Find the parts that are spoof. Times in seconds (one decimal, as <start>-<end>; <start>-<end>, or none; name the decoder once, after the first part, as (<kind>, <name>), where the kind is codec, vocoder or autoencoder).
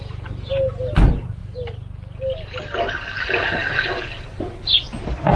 none